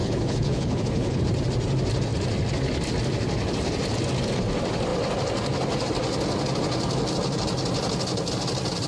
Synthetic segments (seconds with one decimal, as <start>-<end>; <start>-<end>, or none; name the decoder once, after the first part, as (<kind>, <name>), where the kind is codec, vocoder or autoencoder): 0.0-1.2 (codec, HILCodec)